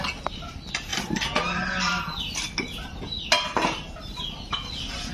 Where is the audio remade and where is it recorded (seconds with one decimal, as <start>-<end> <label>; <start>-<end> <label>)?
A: 0.0-5.1 recorded